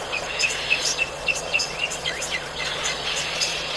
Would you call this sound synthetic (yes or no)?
yes